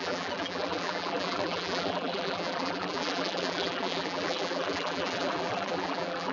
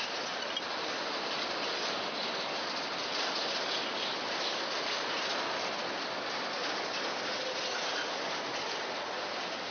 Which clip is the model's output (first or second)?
first